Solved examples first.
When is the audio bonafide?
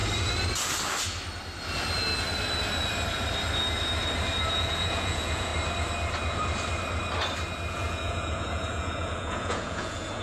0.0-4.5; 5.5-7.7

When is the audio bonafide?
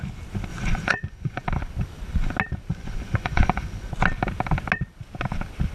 0.0-0.5; 1.5-2.7; 3.9-5.7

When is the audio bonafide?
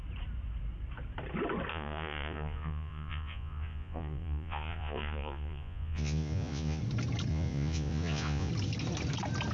0.0-1.7; 6.8-7.3; 8.5-9.5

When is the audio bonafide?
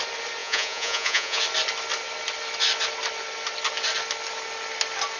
0.0-0.4; 1.4-5.2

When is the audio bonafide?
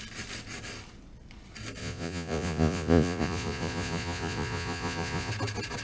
0.0-1.8; 5.3-5.8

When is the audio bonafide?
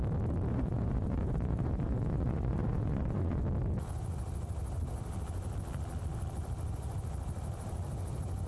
0.0-0.5; 3.4-8.5